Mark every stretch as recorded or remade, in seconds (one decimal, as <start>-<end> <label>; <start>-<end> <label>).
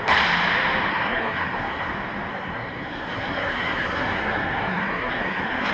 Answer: 0.0-0.9 recorded; 0.9-1.9 remade; 1.9-2.3 recorded; 2.3-5.7 remade